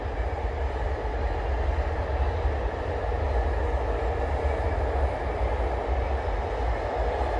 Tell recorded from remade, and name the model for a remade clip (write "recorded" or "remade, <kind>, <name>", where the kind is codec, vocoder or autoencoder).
recorded